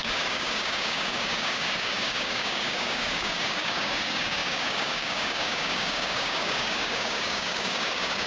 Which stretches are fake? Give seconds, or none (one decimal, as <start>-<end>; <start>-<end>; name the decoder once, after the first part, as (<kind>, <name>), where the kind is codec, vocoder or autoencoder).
0.0-8.3 (codec, DAC)